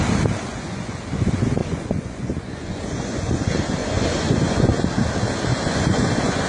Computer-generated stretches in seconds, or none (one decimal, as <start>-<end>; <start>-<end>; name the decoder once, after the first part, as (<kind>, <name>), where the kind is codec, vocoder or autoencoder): 0.5-1.0 (vocoder, Vocos); 1.6-3.4; 3.8-4.7; 5.5-6.5